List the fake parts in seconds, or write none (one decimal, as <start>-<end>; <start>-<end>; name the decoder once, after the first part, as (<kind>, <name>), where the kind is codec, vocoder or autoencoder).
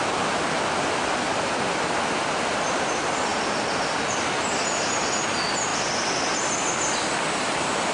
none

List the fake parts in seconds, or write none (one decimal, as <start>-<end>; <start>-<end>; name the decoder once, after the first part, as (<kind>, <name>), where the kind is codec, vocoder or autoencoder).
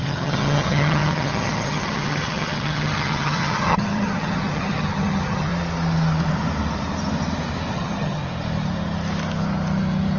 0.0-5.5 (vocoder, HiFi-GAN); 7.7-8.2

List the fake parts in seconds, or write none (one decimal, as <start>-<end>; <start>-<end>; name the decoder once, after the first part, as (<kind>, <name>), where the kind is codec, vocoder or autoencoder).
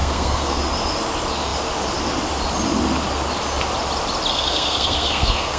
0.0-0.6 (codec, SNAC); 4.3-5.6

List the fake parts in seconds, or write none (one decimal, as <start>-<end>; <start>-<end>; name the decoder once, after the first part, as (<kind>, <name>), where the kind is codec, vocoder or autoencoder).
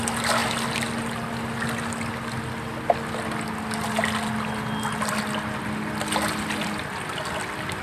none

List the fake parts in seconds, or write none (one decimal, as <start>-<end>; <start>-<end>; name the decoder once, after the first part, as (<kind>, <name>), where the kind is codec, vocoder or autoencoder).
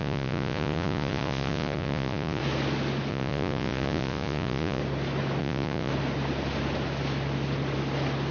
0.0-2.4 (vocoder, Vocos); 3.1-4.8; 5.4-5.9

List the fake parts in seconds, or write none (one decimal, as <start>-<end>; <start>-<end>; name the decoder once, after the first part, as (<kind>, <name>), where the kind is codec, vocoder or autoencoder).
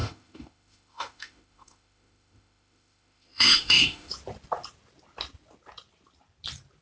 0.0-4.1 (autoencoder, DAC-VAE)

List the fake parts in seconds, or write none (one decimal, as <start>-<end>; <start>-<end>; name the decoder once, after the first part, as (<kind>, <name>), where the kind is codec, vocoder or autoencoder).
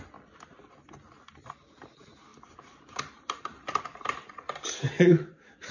2.3-5.7 (vocoder, BigVGAN v2)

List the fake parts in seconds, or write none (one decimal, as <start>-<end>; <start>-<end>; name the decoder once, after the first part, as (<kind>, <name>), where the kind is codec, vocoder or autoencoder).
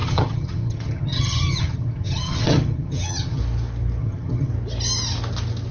0.0-3.4 (vocoder, HiFi-GAN); 4.0-4.5